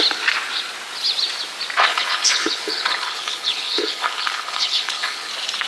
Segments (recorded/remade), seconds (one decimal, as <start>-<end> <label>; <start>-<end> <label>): 0.0-1.9 recorded; 1.9-5.3 remade; 5.3-5.7 recorded